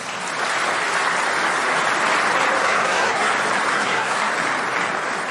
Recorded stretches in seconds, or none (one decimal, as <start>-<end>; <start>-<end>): 0.0-2.6; 3.3-3.7; 4.3-5.3